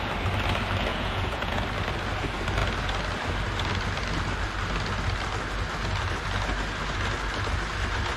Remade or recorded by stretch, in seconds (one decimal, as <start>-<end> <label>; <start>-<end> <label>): 0.0-0.9 recorded; 0.9-1.6 remade; 1.6-8.2 recorded